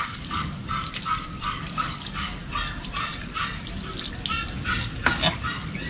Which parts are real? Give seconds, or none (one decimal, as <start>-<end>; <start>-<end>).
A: 0.6-1.6; 2.4-5.9

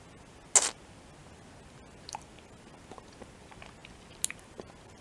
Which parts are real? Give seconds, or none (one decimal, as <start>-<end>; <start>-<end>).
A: 0.0-5.0